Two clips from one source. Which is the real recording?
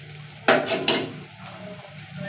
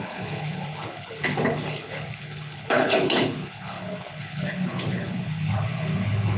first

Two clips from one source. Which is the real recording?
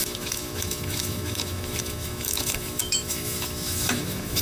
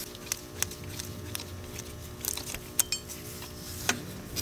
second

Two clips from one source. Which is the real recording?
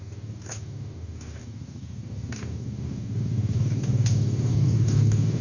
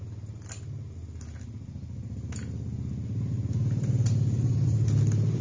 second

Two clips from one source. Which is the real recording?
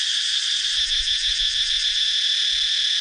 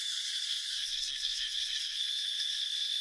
first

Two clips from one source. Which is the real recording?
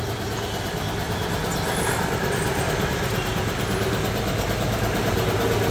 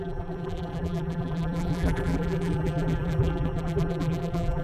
first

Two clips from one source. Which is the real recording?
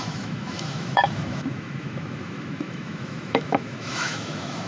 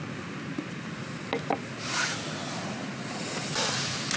second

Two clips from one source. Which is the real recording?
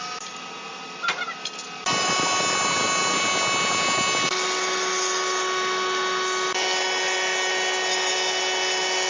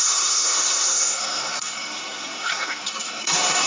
first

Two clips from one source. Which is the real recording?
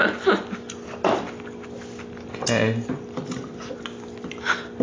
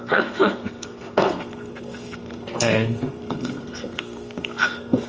first